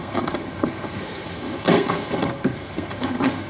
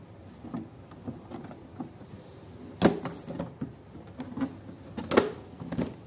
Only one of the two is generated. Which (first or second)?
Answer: first